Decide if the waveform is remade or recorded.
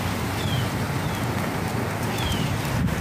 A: recorded